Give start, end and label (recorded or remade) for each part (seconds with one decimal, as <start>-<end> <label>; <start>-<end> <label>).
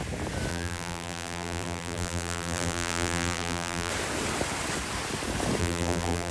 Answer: 0.0-0.5 recorded; 0.5-3.9 remade; 3.9-5.6 recorded; 5.6-6.3 remade